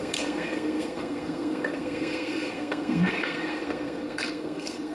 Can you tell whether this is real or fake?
fake